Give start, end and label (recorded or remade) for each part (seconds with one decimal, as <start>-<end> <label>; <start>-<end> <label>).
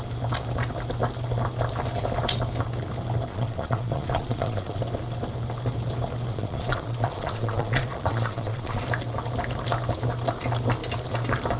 0.0-3.3 recorded; 3.3-4.8 remade; 4.8-6.3 recorded; 6.3-8.8 remade; 8.8-11.6 recorded